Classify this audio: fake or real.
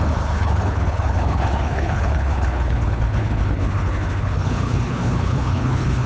fake